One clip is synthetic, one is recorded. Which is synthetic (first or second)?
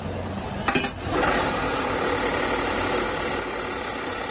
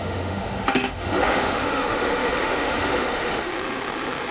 second